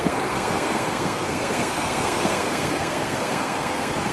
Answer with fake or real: fake